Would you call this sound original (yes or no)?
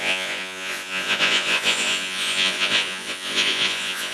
no